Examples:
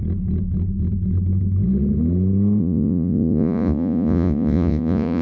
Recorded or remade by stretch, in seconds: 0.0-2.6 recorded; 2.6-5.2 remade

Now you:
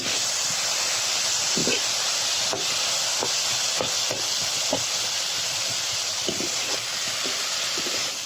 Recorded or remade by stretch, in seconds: 0.0-8.3 recorded